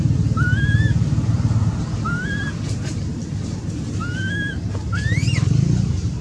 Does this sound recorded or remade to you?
recorded